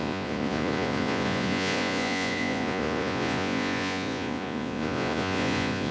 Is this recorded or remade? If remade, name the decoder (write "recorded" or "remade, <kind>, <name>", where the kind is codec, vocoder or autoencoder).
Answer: remade, vocoder, Vocos